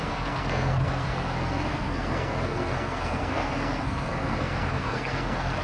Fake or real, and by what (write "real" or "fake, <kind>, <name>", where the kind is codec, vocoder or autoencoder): fake, codec, SNAC